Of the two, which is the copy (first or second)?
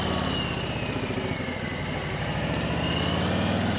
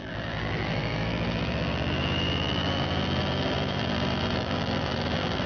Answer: second